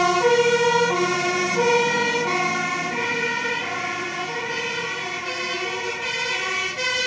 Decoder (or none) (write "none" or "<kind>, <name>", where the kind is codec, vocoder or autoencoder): none